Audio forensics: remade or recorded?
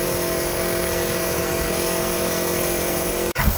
remade